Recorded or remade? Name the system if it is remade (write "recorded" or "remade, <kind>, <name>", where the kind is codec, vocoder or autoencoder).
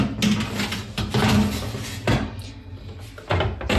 recorded